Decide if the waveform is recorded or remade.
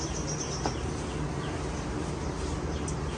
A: recorded